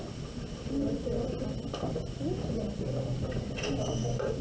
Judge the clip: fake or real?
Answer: real